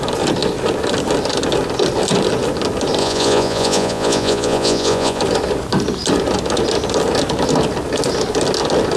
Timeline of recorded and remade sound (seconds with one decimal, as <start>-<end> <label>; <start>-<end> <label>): 0.0-3.0 recorded; 3.0-5.2 remade; 5.2-9.0 recorded